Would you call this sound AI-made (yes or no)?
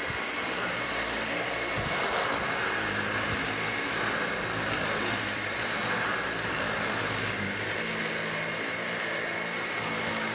no